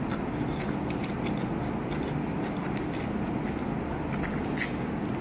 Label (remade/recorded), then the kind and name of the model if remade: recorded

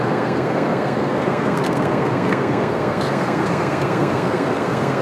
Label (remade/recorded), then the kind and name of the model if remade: remade, codec, SNAC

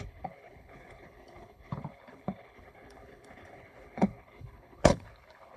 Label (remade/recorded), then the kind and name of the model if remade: remade, codec, HILCodec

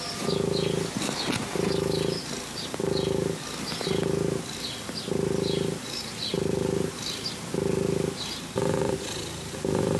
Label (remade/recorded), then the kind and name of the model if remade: recorded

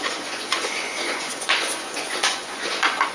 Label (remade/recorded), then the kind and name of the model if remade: remade, vocoder, Vocos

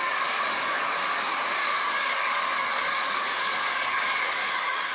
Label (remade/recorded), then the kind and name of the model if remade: remade, codec, DAC